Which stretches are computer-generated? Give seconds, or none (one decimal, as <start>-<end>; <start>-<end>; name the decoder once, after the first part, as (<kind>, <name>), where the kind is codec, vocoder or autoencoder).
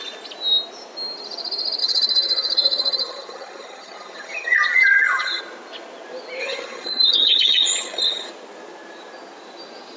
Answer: 1.8-5.4 (vocoder, HiFi-GAN); 6.4-8.3